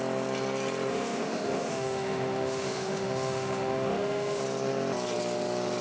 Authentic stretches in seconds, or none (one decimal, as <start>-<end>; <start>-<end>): 0.0-0.9; 4.4-5.8